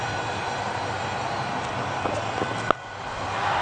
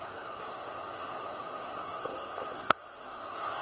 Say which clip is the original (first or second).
first